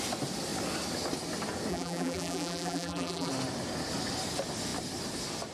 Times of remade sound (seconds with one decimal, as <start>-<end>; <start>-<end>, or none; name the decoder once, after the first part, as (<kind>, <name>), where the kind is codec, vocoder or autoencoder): 1.7-3.3 (vocoder, BigVGAN v2)